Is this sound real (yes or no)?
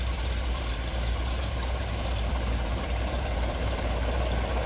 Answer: no